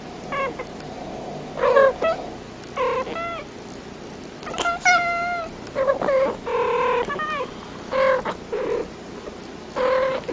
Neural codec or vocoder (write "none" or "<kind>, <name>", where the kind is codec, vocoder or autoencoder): none